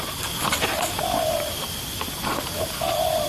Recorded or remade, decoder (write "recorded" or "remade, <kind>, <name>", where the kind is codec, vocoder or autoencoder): remade, vocoder, BigVGAN v2